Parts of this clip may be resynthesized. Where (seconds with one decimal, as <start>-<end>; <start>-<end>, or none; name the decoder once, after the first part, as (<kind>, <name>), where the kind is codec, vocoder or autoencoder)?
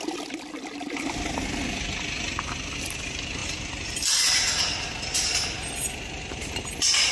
none